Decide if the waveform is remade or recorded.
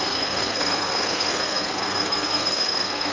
remade